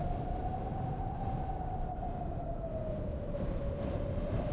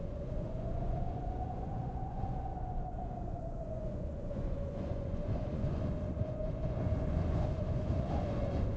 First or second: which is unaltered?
first